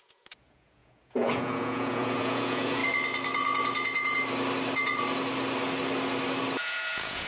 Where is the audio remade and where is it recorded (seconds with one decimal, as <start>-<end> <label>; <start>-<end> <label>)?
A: 0.0-2.8 remade; 2.8-6.6 recorded; 6.6-7.3 remade